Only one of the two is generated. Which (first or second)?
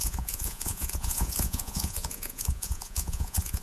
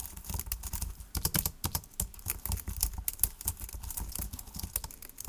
first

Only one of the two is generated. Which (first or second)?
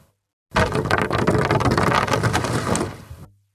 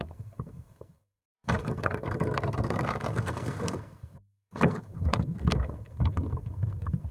second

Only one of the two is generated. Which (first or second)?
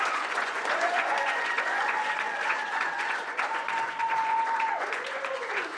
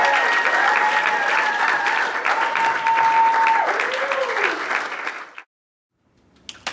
first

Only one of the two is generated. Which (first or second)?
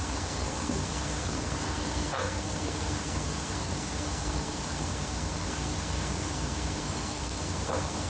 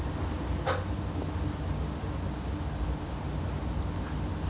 first